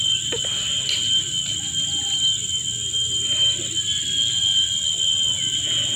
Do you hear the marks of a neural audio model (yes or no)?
no